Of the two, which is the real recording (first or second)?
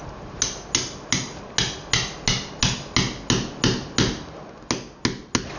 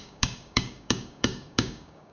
first